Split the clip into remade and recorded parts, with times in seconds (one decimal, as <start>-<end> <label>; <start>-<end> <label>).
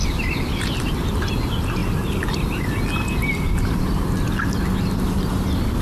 0.0-5.8 recorded